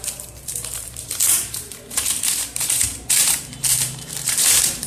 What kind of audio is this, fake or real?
fake